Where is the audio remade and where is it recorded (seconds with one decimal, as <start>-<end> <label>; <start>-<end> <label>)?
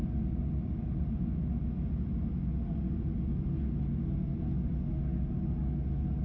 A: 0.0-6.2 recorded